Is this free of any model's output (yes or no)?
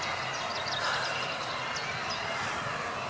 yes